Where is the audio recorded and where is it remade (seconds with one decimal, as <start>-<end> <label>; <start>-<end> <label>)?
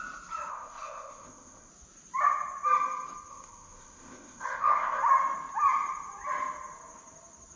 0.0-0.5 recorded; 0.5-1.7 remade; 1.7-3.3 recorded; 3.3-5.0 remade; 5.0-7.6 recorded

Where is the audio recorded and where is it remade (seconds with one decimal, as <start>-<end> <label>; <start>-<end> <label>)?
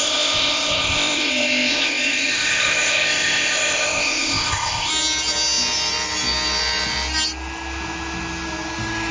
0.0-4.9 remade; 4.9-9.1 recorded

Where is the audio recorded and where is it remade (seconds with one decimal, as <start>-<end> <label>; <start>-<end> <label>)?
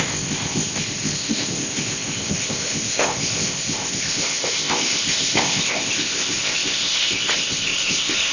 0.0-8.3 remade